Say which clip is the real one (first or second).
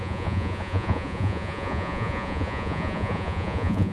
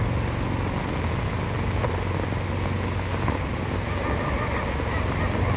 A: second